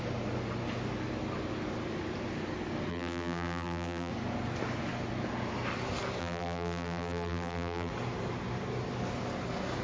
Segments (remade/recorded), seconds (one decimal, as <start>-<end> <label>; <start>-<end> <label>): 0.0-2.9 recorded; 2.9-4.1 remade; 4.1-6.2 recorded; 6.2-7.9 remade; 7.9-9.8 recorded